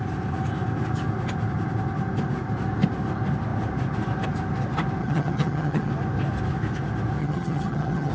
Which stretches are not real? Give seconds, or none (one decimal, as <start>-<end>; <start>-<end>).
5.0-5.9; 7.2-8.1